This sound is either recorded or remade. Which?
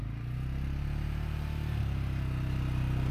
recorded